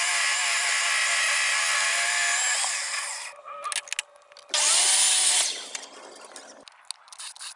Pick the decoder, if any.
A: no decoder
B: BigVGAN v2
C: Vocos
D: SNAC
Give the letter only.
A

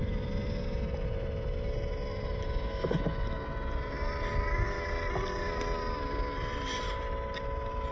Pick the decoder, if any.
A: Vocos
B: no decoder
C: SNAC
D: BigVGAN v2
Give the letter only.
B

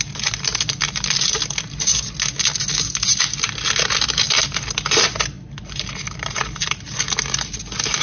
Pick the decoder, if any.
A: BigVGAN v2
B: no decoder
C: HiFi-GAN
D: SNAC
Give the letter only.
B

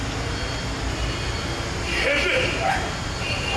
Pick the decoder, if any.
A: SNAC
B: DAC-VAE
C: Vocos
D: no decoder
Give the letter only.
D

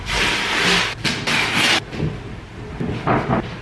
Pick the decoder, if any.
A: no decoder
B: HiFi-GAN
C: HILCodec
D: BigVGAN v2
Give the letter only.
A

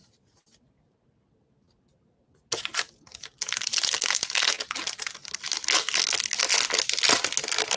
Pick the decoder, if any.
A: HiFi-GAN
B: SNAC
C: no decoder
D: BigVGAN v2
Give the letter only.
C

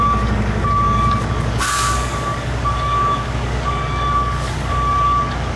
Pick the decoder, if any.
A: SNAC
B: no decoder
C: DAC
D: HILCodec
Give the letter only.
C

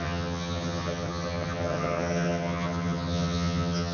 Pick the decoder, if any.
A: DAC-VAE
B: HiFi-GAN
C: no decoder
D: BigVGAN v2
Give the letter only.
B